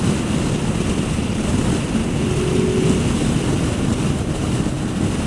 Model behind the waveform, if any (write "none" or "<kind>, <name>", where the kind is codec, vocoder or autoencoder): none